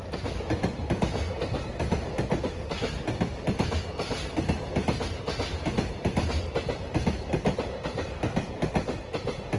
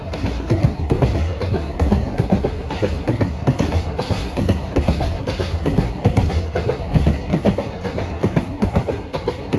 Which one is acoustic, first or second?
first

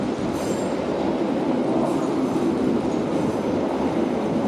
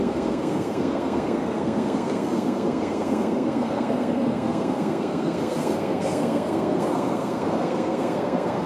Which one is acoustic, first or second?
first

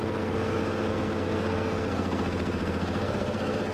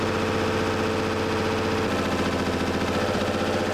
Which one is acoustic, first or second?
second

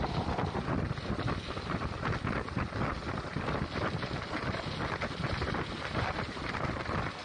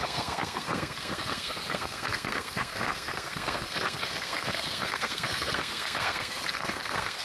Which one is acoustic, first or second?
first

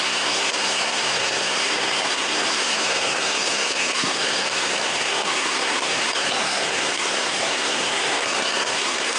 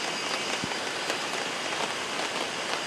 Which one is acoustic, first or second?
second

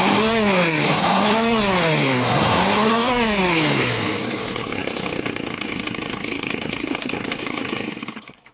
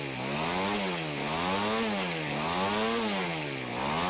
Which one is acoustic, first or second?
second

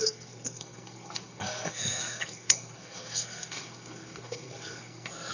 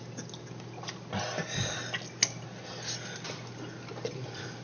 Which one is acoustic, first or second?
second